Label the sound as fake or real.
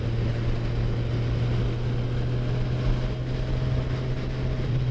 real